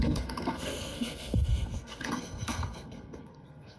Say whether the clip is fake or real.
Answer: fake